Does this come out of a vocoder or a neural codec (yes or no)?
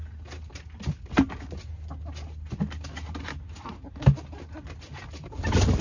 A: no